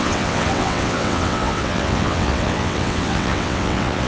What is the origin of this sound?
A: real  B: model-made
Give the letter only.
B